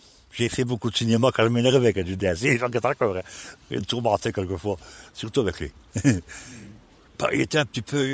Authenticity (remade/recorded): remade